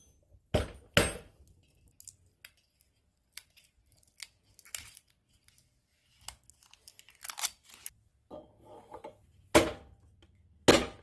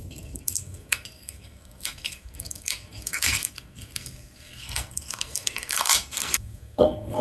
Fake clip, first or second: second